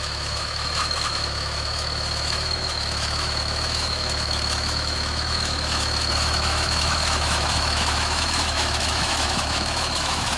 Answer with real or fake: fake